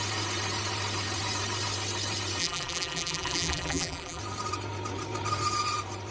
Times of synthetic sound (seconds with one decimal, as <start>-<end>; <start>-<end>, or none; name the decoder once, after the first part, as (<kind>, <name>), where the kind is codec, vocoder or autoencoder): 2.4-4.2 (vocoder, BigVGAN v2)